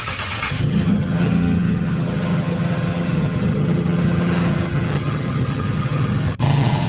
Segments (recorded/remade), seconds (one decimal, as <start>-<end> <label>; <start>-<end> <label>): 0.0-6.9 remade